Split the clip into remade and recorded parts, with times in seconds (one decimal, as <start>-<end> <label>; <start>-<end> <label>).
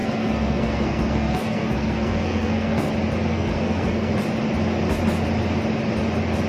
0.0-2.9 remade; 2.9-3.3 recorded; 3.3-4.1 remade; 4.1-6.5 recorded